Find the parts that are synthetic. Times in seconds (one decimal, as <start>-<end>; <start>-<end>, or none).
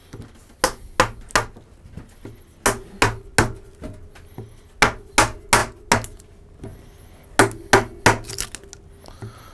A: none